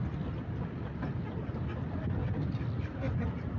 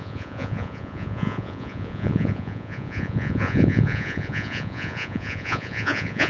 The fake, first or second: second